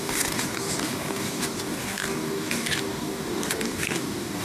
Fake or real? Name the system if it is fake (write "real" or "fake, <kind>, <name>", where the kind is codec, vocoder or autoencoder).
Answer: fake, codec, DAC